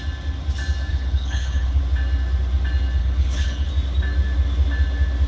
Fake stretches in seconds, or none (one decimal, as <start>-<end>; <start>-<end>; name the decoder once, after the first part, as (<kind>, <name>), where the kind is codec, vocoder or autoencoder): 0.9-1.8 (codec, HILCodec); 3.0-3.7

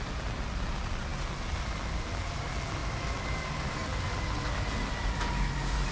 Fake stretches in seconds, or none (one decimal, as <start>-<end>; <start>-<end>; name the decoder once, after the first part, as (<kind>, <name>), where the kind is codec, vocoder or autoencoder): none

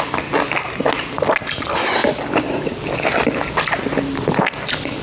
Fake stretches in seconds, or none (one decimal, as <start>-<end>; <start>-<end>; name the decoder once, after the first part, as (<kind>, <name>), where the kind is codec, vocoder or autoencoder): none

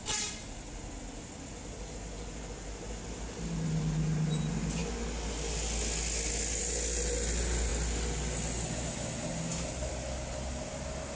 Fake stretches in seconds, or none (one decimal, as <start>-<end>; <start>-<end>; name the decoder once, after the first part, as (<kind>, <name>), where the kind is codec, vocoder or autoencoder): none